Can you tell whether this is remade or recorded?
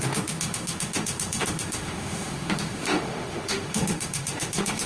remade